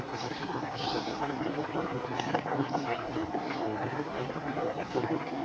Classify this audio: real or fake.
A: fake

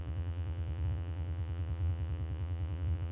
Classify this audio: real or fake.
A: fake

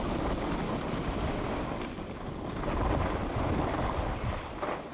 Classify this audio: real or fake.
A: real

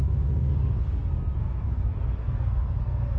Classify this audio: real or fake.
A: fake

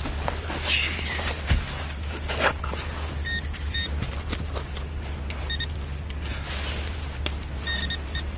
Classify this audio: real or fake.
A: real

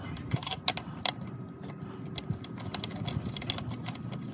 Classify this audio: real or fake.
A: real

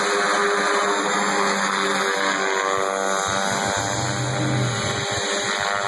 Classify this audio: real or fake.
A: real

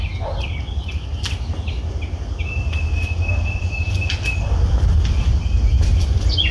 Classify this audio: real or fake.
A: real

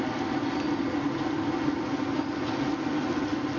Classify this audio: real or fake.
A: real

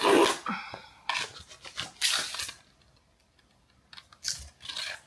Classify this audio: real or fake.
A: real